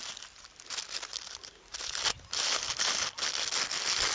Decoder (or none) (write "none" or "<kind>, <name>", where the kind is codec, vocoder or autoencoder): none